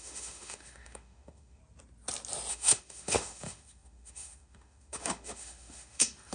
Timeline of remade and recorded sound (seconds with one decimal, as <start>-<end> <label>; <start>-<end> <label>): 0.0-1.6 remade; 1.6-2.5 recorded; 2.5-6.3 remade

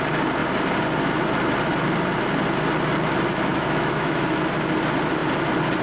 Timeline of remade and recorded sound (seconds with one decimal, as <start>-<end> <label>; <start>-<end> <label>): 0.0-3.5 recorded; 3.5-4.2 remade; 4.2-5.8 recorded

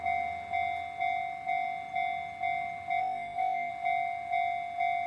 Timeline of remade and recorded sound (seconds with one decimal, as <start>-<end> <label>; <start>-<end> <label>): 0.0-3.0 recorded; 3.0-3.7 remade; 3.7-5.1 recorded

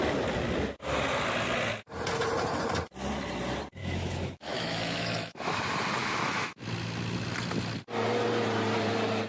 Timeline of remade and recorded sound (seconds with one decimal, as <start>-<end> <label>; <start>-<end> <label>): 0.0-3.8 recorded; 3.8-5.6 remade; 5.6-6.0 recorded; 6.0-6.6 remade; 6.6-9.3 recorded

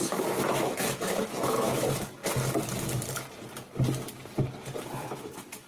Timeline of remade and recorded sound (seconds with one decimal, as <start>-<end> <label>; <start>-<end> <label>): 0.0-2.2 remade; 2.2-4.9 recorded; 4.9-5.7 remade

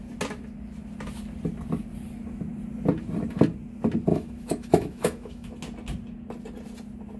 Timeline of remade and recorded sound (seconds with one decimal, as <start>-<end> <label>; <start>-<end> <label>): 0.0-4.1 recorded; 4.1-5.5 remade; 5.5-7.2 recorded